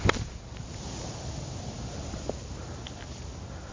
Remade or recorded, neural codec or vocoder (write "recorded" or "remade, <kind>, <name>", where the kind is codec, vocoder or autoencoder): recorded